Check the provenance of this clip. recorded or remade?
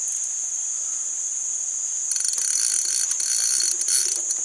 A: recorded